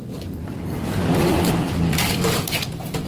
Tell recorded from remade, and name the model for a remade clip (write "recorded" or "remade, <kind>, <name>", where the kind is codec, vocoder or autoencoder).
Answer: recorded